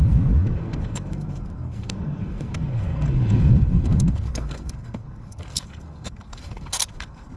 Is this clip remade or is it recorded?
remade